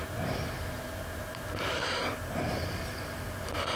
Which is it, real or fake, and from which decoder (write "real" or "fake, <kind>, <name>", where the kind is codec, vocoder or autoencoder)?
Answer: real